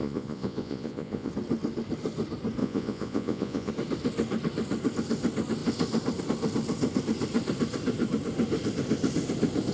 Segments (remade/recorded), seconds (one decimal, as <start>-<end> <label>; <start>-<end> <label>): 0.0-1.3 remade; 1.3-2.6 recorded; 2.6-3.7 remade; 3.7-9.7 recorded